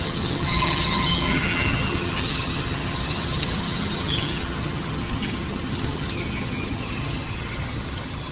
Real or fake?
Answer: fake